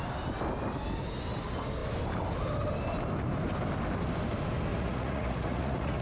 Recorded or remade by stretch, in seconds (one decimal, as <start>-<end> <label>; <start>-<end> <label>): 0.0-4.7 recorded; 4.7-6.0 remade